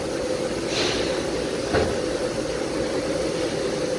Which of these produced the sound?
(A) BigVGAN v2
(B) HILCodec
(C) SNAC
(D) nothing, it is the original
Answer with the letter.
D